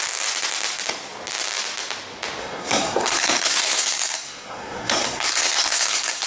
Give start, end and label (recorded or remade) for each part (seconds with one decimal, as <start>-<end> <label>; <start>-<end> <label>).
0.0-2.4 recorded; 2.4-6.3 remade